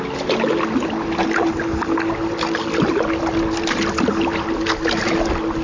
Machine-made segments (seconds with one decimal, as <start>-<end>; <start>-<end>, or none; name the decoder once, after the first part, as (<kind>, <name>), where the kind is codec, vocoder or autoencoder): none